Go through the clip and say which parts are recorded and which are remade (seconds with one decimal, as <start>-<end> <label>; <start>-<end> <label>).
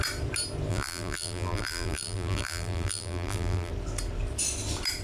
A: 0.0-0.7 recorded; 0.7-3.7 remade; 3.7-5.0 recorded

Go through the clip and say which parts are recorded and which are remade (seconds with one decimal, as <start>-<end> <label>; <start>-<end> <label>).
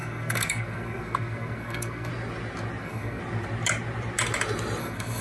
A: 0.0-2.1 remade; 2.1-2.8 recorded; 2.8-3.2 remade; 3.2-4.8 recorded; 4.8-5.2 remade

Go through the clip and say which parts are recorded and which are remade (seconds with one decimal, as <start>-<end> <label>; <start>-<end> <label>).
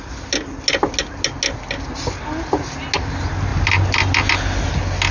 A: 0.0-5.1 recorded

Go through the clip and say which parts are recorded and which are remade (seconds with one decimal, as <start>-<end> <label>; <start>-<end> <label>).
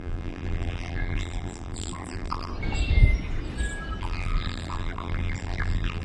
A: 0.0-2.5 remade; 2.5-4.0 recorded; 4.0-6.0 remade